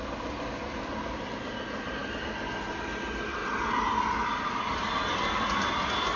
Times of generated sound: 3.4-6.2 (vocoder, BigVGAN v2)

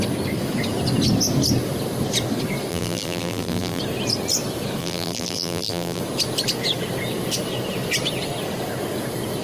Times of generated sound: 2.7-3.8 (vocoder, BigVGAN v2); 4.8-6.0